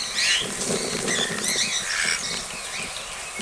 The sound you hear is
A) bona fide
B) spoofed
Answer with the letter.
A